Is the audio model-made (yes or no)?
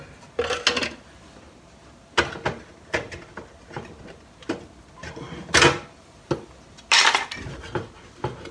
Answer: no